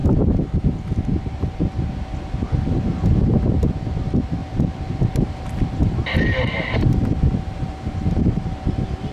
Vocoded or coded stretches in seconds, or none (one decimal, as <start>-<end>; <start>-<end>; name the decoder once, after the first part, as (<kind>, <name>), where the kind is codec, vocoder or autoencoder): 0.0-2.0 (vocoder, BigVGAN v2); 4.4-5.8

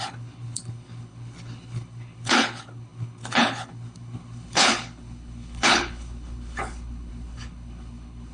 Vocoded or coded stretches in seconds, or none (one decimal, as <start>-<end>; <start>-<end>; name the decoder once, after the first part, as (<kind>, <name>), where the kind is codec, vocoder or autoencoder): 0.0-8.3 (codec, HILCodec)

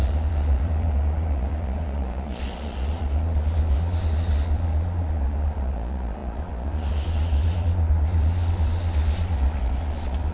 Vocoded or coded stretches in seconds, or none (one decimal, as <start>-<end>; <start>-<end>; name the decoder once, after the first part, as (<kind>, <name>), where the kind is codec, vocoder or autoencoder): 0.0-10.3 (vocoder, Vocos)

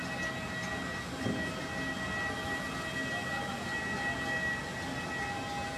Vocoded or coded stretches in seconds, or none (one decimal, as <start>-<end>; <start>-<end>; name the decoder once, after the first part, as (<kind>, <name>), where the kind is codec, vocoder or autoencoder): none

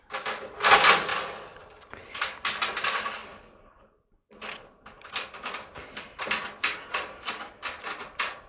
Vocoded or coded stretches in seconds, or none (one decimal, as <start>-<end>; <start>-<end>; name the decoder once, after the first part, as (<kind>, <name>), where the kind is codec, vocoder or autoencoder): 1.1-2.0 (vocoder, BigVGAN v2); 3.2-7.5

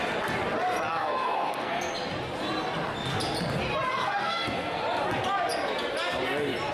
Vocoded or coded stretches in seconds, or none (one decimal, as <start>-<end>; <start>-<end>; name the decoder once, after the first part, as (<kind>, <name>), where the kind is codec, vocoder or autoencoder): 0.9-1.9 (codec, SNAC); 3.9-4.8